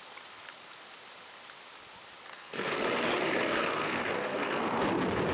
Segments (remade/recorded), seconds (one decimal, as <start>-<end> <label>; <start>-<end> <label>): 0.0-2.3 recorded; 2.3-2.8 remade; 2.8-3.7 recorded; 3.7-4.8 remade; 4.8-5.3 recorded